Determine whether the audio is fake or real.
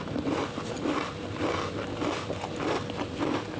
real